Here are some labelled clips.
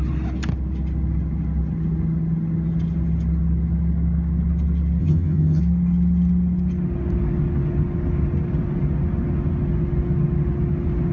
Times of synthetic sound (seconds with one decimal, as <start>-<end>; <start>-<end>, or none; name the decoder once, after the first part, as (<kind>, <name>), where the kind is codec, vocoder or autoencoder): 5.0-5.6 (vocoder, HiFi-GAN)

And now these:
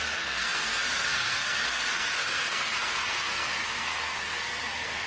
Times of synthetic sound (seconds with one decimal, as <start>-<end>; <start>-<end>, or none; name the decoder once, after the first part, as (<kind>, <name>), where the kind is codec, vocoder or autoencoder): 0.0-5.1 (codec, SNAC)

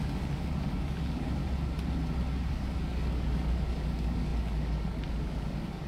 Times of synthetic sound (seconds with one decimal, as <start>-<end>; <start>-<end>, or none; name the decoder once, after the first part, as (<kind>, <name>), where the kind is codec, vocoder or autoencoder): 0.0-1.4 (codec, DAC); 2.5-5.9